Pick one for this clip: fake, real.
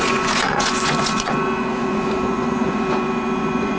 fake